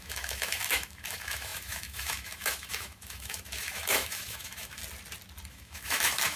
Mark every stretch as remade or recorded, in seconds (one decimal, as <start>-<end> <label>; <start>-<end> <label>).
0.0-4.8 remade; 4.8-5.5 recorded; 5.5-6.4 remade